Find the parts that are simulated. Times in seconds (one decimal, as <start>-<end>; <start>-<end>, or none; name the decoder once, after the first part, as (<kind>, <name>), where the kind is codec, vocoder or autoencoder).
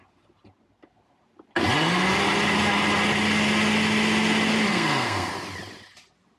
4.7-5.3 (codec, SNAC)